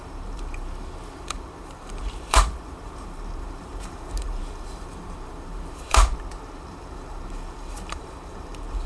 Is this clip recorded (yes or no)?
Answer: no